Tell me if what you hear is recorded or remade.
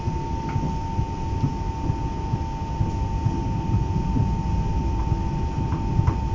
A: recorded